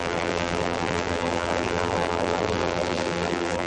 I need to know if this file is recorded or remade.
remade